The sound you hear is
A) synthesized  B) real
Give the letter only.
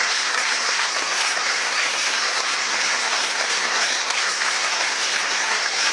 A